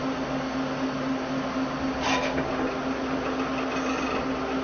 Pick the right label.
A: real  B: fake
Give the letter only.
A